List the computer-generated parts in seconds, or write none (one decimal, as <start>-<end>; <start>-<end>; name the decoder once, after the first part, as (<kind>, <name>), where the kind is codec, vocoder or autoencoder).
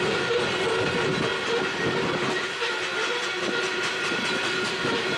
none